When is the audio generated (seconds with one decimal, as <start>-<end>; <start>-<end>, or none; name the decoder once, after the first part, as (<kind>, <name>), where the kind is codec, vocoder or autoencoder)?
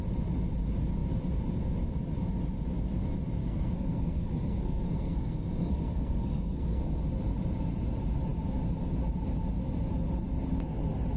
3.4-7.0 (codec, SNAC)